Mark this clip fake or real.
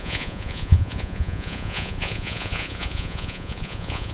fake